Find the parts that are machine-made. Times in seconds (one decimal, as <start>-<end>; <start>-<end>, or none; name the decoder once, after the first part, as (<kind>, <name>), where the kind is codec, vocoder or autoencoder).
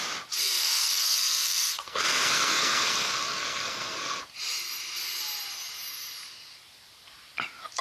0.4-4.2 (codec, SNAC)